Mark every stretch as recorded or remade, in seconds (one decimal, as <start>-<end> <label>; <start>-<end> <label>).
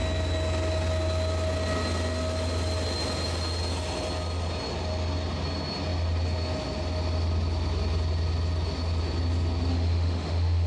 0.0-9.7 recorded; 9.7-10.7 remade